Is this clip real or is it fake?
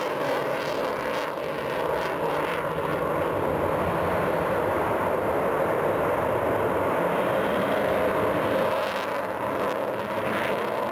real